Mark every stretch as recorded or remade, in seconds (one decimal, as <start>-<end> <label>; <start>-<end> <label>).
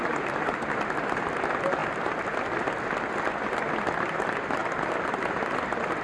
0.0-6.0 recorded